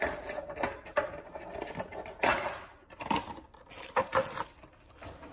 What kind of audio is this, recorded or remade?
recorded